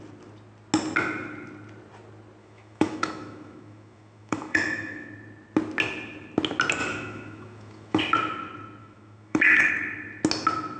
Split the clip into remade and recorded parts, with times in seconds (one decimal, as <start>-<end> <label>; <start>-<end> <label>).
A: 0.0-2.4 recorded; 2.4-5.1 remade; 5.1-6.8 recorded; 6.8-8.0 remade; 8.0-8.8 recorded; 8.8-9.7 remade; 9.7-10.8 recorded